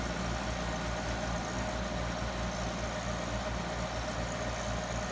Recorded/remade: recorded